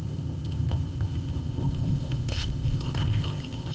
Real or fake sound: fake